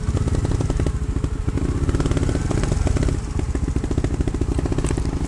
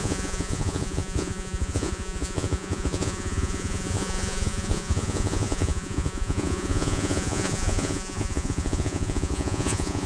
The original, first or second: first